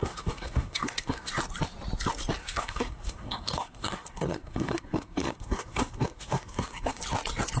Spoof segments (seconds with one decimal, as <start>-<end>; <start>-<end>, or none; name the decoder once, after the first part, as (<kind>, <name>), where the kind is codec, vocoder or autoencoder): 0.0-1.3 (codec, SNAC); 2.4-7.0